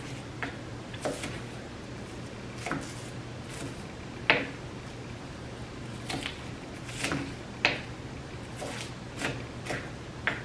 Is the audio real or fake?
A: real